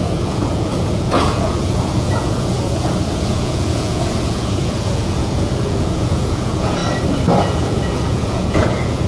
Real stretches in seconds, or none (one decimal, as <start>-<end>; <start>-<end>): 6.8-7.4